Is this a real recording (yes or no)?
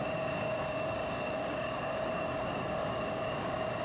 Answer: no